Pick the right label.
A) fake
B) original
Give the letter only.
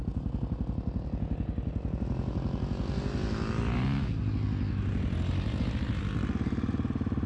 B